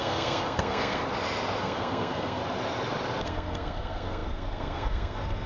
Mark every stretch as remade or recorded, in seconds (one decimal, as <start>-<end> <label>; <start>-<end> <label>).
0.0-1.0 remade; 1.0-1.6 recorded; 1.6-2.4 remade; 2.4-3.2 recorded; 3.2-5.5 remade